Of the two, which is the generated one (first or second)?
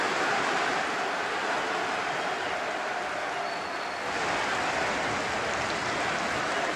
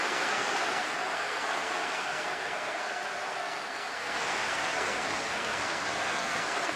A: second